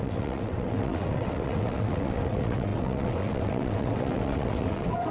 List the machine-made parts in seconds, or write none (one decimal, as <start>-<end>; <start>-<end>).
0.0-5.1